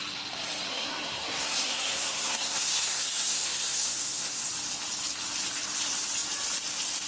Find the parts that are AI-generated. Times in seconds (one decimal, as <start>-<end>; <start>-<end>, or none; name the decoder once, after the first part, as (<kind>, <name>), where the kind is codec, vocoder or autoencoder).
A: 0.7-4.5 (codec, SNAC)

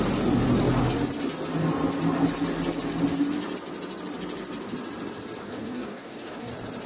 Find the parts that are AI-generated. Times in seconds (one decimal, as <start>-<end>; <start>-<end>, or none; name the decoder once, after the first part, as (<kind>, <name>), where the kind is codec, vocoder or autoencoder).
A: 5.4-6.5 (codec, DAC)

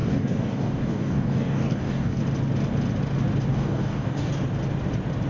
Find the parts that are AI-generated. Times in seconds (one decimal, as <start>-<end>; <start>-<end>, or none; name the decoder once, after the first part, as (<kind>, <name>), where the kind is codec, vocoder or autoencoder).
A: 0.0-2.2 (codec, DAC); 3.5-4.3